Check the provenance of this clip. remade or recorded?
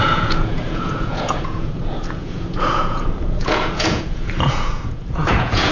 remade